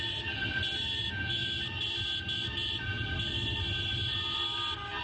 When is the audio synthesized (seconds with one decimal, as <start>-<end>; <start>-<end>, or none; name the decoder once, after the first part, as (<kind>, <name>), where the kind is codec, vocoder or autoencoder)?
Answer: none